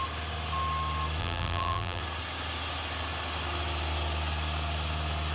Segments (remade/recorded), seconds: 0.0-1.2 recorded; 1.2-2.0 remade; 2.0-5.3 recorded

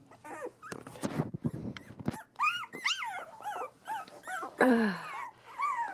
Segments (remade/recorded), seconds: 0.0-5.9 recorded

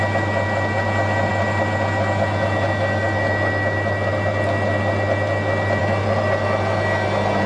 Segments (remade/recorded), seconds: 0.0-7.5 recorded

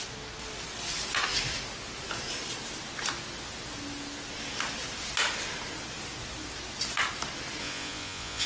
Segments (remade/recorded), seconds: 0.0-7.6 recorded; 7.6-8.5 remade